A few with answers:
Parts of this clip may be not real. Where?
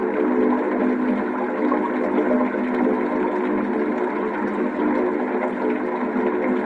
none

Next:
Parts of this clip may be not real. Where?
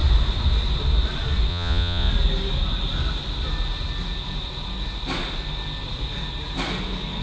1.5-2.1 (vocoder, Vocos)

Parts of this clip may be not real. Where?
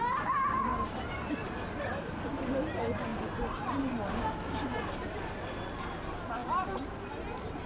6.4-6.9 (vocoder, BigVGAN v2)